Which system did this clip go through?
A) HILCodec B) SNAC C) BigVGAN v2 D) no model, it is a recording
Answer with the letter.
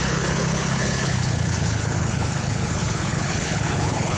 A